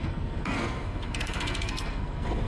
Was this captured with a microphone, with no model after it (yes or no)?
no